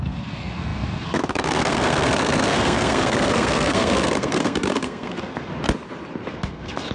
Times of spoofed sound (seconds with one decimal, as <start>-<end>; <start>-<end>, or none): 0.0-5.5; 6.3-6.9